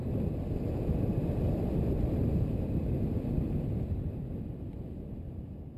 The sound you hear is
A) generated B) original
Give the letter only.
B